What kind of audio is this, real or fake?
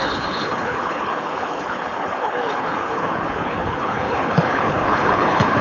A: fake